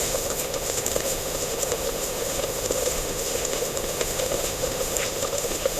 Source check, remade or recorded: remade